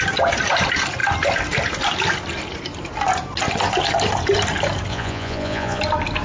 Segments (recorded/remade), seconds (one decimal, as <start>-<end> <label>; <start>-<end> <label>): 0.0-4.9 recorded; 4.9-5.8 remade; 5.8-6.2 recorded